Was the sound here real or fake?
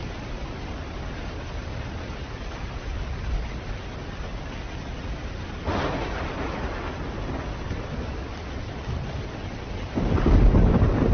real